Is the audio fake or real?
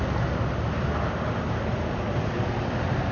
real